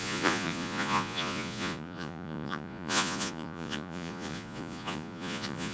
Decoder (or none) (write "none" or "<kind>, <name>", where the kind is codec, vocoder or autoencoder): vocoder, Vocos